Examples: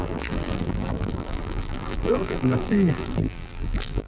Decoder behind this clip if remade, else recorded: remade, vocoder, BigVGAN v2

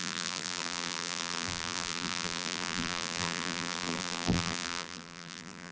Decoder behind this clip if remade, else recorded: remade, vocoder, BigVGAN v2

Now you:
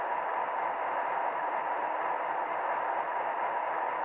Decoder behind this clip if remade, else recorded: recorded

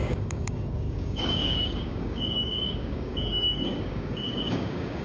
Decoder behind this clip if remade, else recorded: remade, codec, DAC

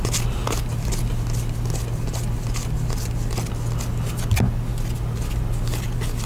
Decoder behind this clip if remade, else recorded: recorded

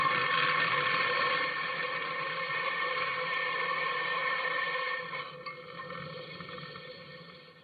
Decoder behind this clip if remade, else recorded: recorded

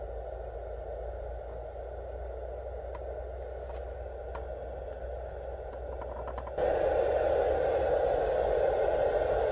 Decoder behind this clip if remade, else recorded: recorded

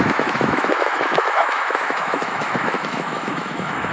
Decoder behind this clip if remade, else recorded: remade, autoencoder, DAC-VAE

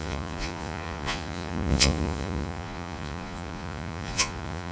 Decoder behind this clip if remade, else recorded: remade, vocoder, Vocos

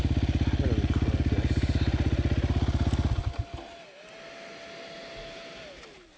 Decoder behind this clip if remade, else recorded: recorded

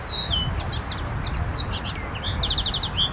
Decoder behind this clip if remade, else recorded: recorded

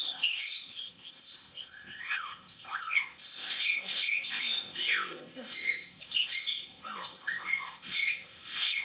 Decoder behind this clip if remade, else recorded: remade, codec, ZipCodec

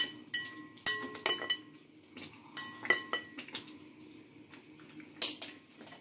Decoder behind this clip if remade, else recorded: recorded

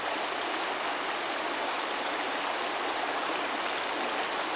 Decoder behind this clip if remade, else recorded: recorded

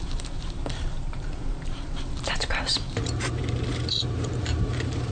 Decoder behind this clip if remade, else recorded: remade, vocoder, BigVGAN v2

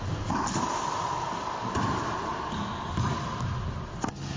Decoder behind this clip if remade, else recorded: recorded